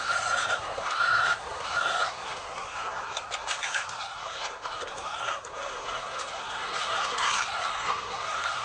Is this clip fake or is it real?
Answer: fake